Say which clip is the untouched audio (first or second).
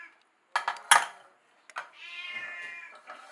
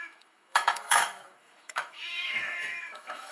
first